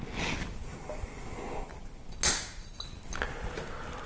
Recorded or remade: recorded